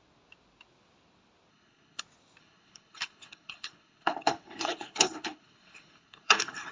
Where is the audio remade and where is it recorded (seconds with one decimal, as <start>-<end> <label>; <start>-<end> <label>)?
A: 0.0-1.5 recorded; 1.5-2.0 remade; 2.0-2.4 recorded; 2.4-6.7 remade